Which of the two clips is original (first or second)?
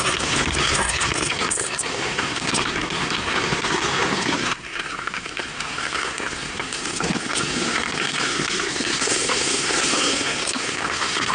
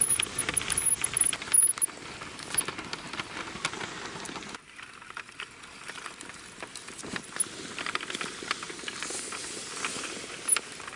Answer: second